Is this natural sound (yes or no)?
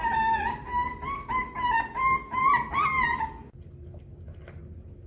yes